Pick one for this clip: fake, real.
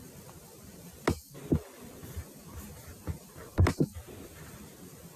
real